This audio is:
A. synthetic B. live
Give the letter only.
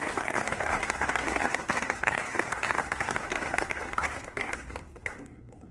A